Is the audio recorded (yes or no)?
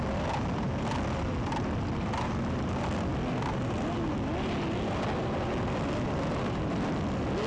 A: yes